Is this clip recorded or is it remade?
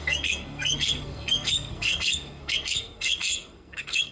remade